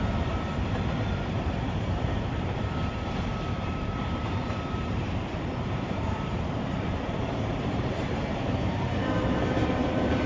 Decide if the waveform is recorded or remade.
remade